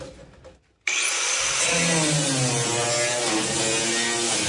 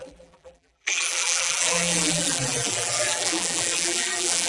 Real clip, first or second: first